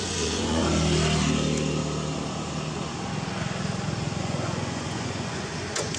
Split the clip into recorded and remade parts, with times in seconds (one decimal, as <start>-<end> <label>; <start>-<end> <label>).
0.0-0.6 remade; 0.6-4.2 recorded; 4.2-6.0 remade